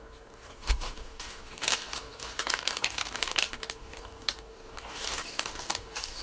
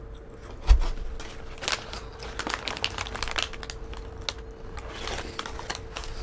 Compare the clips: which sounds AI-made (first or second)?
first